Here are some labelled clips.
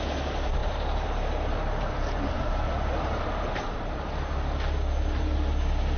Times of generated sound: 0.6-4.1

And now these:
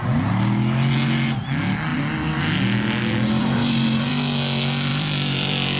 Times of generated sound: 3.4-4.1; 4.9-5.8